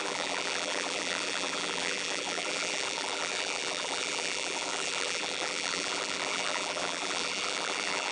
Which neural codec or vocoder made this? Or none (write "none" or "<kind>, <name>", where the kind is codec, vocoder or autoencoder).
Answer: vocoder, BigVGAN v2